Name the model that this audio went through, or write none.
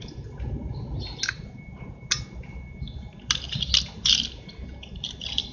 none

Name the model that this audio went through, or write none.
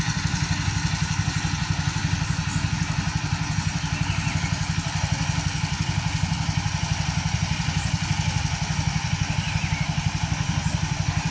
none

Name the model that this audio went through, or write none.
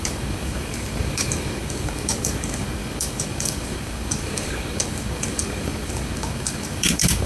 codec, DAC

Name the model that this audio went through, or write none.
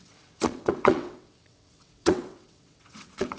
vocoder, WaveNeXt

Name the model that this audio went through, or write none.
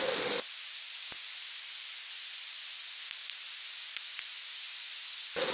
none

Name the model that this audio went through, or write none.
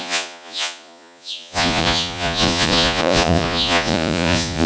vocoder, Vocos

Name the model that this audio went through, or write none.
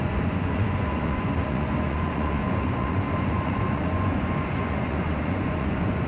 vocoder, Vocos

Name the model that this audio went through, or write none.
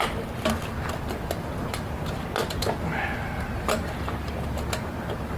none